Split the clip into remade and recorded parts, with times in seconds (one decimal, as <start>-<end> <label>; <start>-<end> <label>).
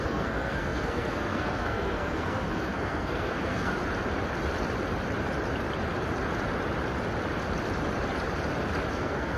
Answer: 0.0-3.7 remade; 3.7-8.9 recorded; 8.9-9.4 remade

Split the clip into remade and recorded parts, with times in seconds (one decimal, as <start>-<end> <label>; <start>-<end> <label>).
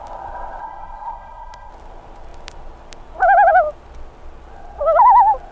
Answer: 0.0-0.6 recorded; 0.6-1.7 remade; 1.7-5.5 recorded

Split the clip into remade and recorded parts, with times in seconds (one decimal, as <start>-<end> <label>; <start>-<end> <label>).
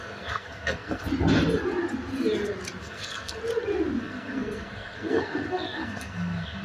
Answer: 0.0-1.1 remade; 1.1-2.8 recorded; 2.8-3.4 remade; 3.4-4.0 recorded; 4.0-6.6 remade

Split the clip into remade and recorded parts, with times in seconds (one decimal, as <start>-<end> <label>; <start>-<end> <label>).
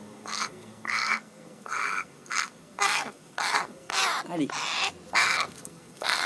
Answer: 0.0-4.0 remade; 4.0-5.1 recorded; 5.1-6.3 remade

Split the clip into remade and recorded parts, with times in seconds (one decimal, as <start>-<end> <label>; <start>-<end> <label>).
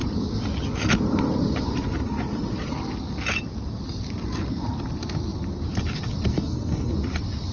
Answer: 0.0-6.3 recorded; 6.3-6.9 remade; 6.9-7.5 recorded